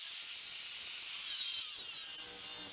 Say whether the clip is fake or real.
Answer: real